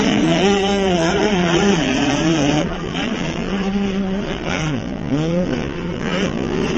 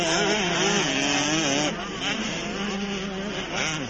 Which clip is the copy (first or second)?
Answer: first